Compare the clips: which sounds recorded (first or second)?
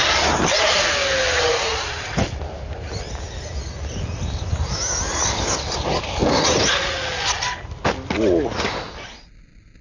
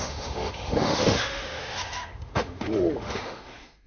first